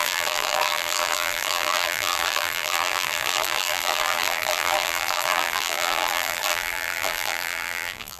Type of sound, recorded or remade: remade